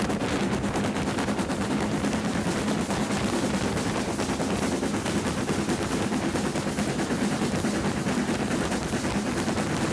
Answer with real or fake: real